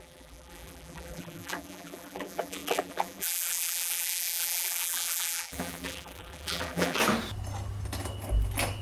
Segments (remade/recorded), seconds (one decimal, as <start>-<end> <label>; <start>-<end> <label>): 0.0-7.0 remade; 7.0-8.8 recorded